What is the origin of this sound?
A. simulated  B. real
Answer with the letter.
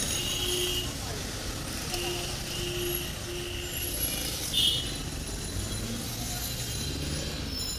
B